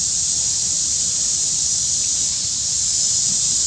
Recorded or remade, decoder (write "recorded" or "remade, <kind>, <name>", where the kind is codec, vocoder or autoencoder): recorded